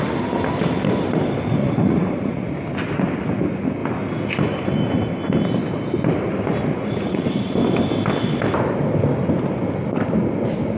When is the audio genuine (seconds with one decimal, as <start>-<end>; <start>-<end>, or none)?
0.0-1.6; 2.5-6.7; 7.3-10.8